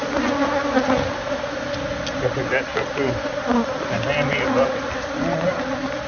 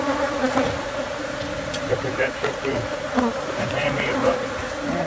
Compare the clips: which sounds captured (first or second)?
first